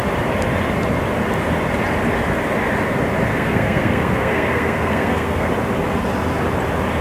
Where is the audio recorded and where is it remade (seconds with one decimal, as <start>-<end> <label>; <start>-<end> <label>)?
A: 0.0-3.3 recorded; 3.3-5.5 remade; 5.5-7.0 recorded